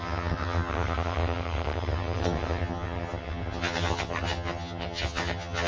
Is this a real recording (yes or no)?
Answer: no